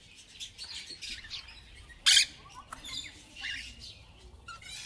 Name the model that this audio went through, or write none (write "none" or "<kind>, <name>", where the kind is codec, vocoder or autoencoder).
none